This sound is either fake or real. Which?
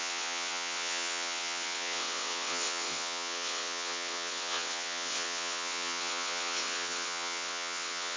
fake